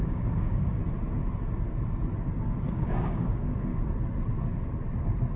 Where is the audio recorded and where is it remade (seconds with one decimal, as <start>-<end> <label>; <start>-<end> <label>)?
0.0-0.8 remade; 0.8-2.6 recorded; 2.6-3.7 remade; 3.7-5.4 recorded